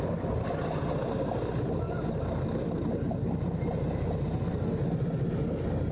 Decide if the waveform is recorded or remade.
recorded